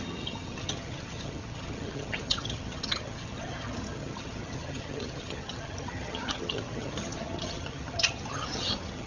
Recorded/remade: remade